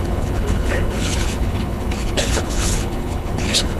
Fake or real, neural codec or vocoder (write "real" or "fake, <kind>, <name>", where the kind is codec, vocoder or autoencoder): fake, codec, HILCodec